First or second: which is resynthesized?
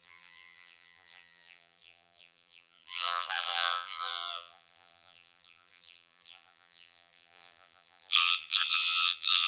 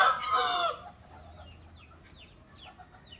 first